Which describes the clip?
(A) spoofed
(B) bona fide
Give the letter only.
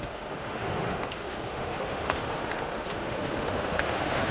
A